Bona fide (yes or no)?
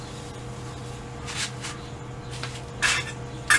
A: yes